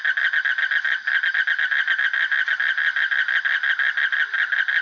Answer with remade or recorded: recorded